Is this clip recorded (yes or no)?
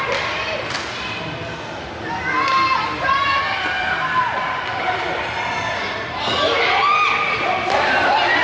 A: yes